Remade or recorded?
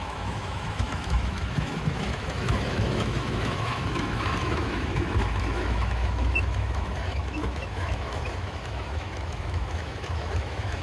remade